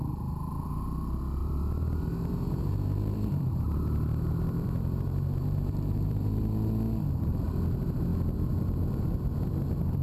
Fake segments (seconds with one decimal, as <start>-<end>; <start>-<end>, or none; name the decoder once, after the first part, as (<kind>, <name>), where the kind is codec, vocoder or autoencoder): 1.4-6.4 (vocoder, BigVGAN v2)